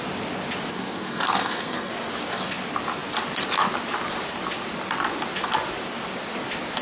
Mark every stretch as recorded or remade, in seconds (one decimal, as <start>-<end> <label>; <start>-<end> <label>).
0.0-0.7 recorded; 0.7-1.9 remade; 1.9-6.8 recorded